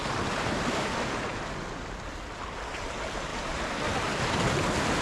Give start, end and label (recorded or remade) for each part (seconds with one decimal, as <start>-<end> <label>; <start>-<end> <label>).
0.0-5.0 recorded